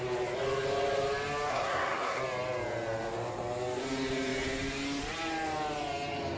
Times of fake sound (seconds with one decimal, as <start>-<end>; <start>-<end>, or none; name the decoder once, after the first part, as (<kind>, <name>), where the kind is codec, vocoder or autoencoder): 1.5-2.2 (codec, SNAC)